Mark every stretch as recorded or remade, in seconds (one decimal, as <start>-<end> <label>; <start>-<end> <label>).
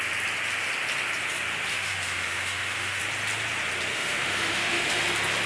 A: 0.0-1.7 recorded; 1.7-3.0 remade; 3.0-3.9 recorded; 3.9-5.0 remade; 5.0-5.5 recorded